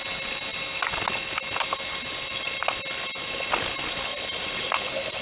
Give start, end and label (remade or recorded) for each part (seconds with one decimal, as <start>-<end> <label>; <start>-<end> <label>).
0.0-5.2 recorded